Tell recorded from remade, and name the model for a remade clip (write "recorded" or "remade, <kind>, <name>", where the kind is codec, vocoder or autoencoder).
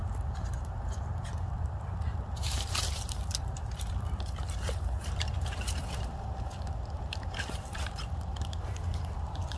remade, vocoder, BigVGAN v2